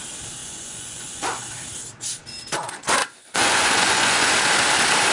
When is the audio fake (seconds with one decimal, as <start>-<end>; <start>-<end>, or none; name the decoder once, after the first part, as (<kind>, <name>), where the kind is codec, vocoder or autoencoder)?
0.4-1.4 (vocoder, Vocos); 3.0-4.3